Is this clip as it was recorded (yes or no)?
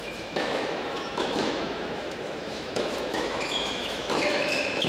no